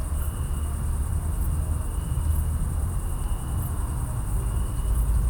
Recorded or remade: recorded